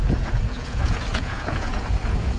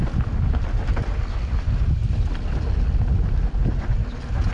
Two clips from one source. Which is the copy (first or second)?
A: first